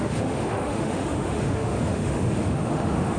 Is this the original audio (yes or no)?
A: no